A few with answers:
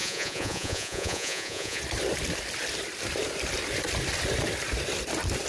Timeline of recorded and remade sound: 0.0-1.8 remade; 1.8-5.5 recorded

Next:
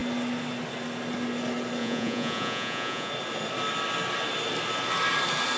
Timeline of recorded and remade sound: 0.0-1.8 recorded; 1.8-3.1 remade; 3.1-5.6 recorded